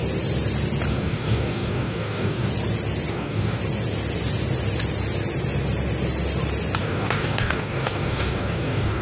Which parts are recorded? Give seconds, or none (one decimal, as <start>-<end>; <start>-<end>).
0.0-0.9; 2.5-3.1; 3.6-6.8

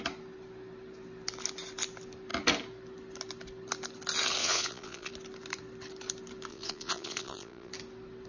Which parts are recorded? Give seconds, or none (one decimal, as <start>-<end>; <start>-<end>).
0.0-4.4; 5.1-6.5; 7.7-8.3